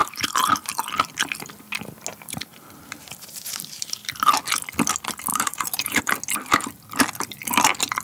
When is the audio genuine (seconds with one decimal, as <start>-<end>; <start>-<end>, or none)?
0.7-2.1; 4.1-5.3; 6.0-8.0